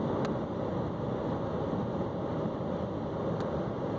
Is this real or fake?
real